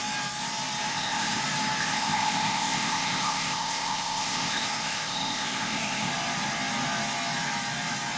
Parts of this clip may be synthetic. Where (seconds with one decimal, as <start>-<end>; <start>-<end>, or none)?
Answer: 0.9-1.4; 1.8-6.1